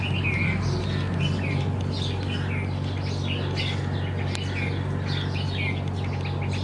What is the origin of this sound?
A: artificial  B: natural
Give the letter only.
B